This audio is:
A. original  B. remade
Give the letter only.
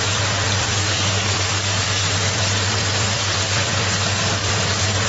B